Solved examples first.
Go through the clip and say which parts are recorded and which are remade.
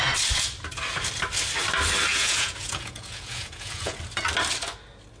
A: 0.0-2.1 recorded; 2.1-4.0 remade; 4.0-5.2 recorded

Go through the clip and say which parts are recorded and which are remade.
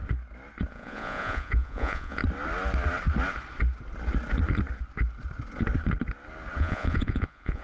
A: 0.0-0.7 recorded; 0.7-2.2 remade; 2.2-6.6 recorded; 6.6-7.6 remade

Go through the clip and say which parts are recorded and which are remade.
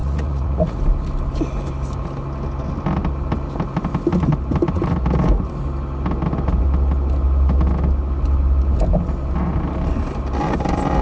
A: 0.0-0.8 remade; 0.8-11.0 recorded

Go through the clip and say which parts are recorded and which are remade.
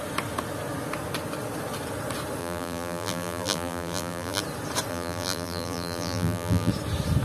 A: 0.0-2.4 recorded; 2.4-4.4 remade; 4.4-4.9 recorded; 4.9-6.7 remade; 6.7-7.2 recorded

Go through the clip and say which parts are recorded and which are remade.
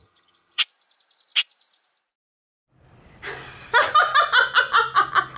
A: 0.0-0.6 remade; 0.6-5.4 recorded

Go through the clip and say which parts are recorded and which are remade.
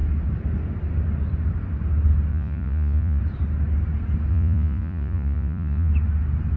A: 0.0-2.3 recorded; 2.3-3.2 remade; 3.2-4.3 recorded; 4.3-5.9 remade; 5.9-6.6 recorded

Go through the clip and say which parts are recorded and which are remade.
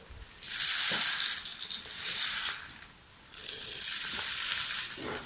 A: 0.0-5.3 recorded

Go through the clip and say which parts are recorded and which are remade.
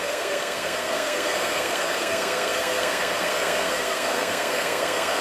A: 0.0-5.2 remade